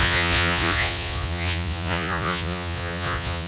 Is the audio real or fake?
fake